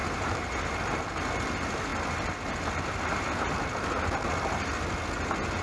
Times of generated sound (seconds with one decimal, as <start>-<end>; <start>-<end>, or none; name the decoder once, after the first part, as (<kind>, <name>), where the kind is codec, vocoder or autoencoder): 0.0-0.8 (vocoder, BigVGAN v2)